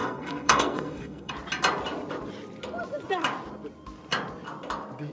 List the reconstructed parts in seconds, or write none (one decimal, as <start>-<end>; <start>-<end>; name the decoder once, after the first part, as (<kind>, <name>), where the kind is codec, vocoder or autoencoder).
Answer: 0.0-1.3 (codec, SNAC)